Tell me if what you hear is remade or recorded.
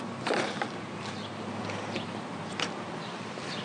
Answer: remade